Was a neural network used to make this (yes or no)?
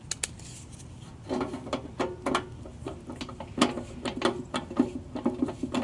no